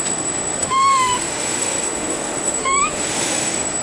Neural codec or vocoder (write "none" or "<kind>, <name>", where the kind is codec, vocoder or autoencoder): autoencoder, DAC-VAE